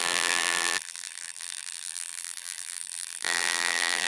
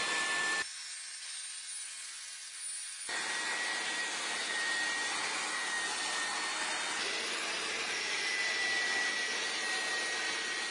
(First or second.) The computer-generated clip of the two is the first